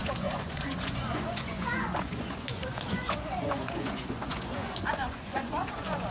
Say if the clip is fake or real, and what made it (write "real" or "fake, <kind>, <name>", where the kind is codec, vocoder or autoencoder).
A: fake, vocoder, Vocos